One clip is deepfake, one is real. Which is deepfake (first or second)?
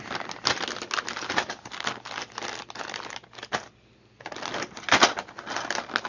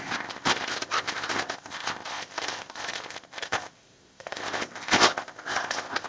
second